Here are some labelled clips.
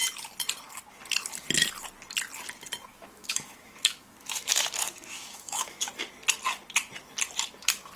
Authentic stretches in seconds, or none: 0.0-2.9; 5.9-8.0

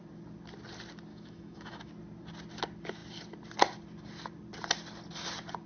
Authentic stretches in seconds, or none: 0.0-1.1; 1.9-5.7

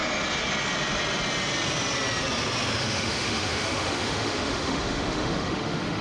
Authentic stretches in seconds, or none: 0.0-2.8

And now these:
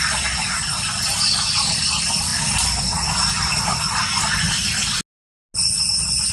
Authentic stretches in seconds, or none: 0.0-6.3

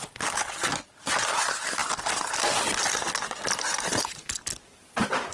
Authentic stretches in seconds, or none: 0.0-5.3

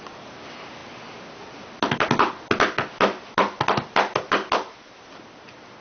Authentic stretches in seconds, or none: 0.0-5.8